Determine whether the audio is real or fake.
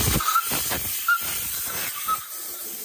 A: real